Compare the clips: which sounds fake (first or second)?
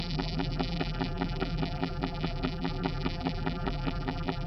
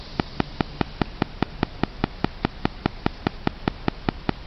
first